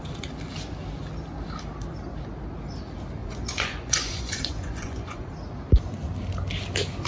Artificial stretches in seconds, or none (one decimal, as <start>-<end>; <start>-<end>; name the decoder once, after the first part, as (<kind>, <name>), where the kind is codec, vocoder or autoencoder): 3.2-5.3 (vocoder, Vocos)